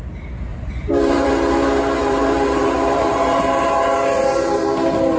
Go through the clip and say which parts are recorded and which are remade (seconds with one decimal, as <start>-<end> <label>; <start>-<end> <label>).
0.0-0.5 recorded; 0.5-1.3 remade; 1.3-2.0 recorded; 2.0-5.2 remade